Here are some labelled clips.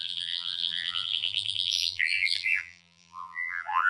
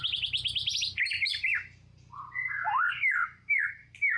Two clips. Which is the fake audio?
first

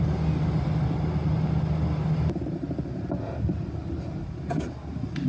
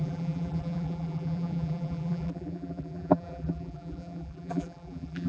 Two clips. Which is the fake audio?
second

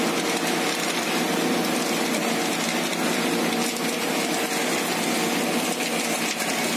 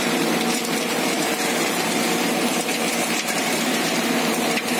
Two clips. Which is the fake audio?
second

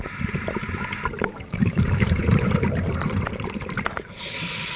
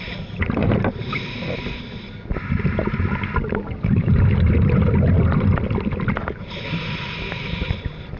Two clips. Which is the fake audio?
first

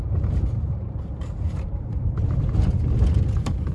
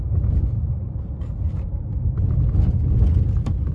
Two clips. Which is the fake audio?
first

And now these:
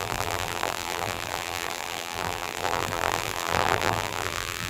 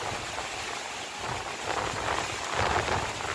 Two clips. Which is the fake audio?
first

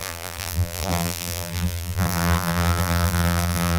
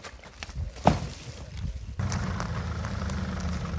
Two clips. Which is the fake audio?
first